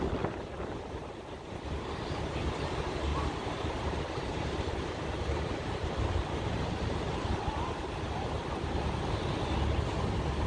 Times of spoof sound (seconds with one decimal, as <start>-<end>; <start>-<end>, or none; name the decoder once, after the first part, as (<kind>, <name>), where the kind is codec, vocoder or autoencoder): 3.1-7.4 (vocoder, BigVGAN v2)